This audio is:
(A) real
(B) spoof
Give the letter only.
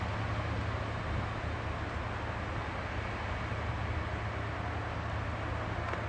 A